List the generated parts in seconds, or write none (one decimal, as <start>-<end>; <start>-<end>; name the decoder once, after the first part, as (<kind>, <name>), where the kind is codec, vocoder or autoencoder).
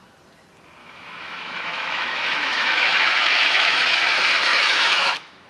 0.8-4.0 (autoencoder, DAC-VAE); 4.5-5.5